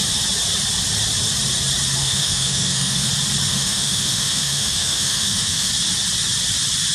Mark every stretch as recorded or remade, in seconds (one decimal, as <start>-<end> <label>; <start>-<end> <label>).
0.0-2.0 recorded; 2.0-3.1 remade; 3.1-3.5 recorded; 3.5-5.7 remade; 5.7-6.9 recorded